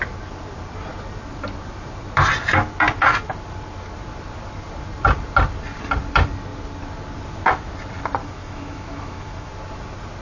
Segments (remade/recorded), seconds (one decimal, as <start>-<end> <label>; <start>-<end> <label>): 0.0-8.2 recorded; 8.2-9.5 remade; 9.5-10.2 recorded